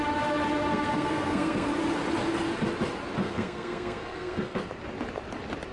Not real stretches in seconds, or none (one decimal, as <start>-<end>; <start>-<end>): 0.7-1.7; 3.2-4.6